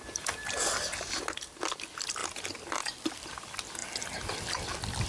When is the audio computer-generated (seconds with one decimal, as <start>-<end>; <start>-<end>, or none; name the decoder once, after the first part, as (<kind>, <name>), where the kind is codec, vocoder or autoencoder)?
none